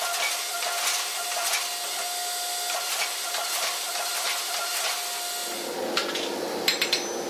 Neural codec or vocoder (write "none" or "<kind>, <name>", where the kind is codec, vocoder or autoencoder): none